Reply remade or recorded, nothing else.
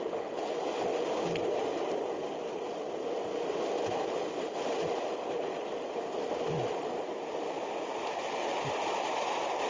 recorded